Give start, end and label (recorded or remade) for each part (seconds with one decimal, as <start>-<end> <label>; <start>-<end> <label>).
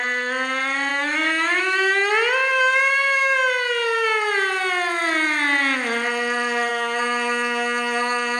0.0-0.9 recorded; 0.9-2.1 remade; 2.1-6.7 recorded; 6.7-8.4 remade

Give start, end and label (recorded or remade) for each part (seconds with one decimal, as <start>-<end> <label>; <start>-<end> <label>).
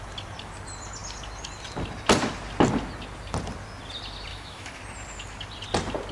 0.0-4.3 recorded; 4.3-4.8 remade; 4.8-6.1 recorded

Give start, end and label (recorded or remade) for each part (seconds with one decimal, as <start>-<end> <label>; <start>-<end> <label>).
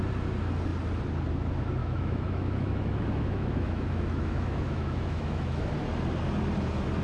0.0-1.8 recorded; 1.8-5.7 remade; 5.7-7.0 recorded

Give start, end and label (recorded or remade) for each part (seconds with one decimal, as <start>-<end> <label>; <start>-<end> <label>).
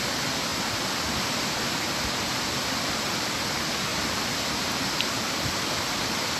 0.0-3.9 recorded; 3.9-6.4 remade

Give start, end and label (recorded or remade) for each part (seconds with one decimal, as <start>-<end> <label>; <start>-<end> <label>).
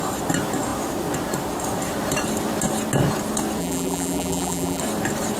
0.0-3.6 recorded; 3.6-4.8 remade; 4.8-5.4 recorded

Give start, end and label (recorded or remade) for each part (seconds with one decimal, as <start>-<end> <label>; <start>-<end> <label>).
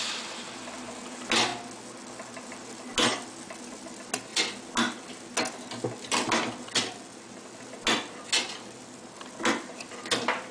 0.0-10.5 recorded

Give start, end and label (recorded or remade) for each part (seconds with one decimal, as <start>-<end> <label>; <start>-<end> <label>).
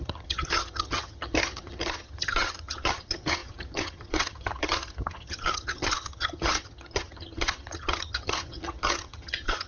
0.0-9.7 remade